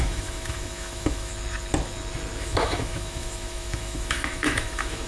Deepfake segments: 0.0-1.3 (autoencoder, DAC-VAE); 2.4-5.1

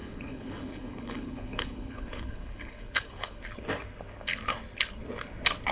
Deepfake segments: 0.0-3.4 (codec, HILCodec)

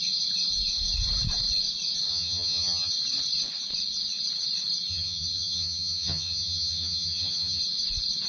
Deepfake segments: 2.1-2.9 (vocoder, HiFi-GAN); 4.9-7.6